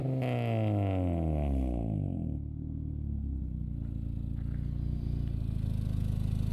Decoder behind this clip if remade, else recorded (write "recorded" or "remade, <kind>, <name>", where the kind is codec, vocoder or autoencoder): recorded